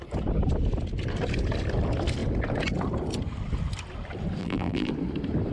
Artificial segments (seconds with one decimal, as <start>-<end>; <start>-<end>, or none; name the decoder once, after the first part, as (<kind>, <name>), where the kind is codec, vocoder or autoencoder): 4.4-4.9 (vocoder, BigVGAN v2)